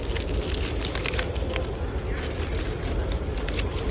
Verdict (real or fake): real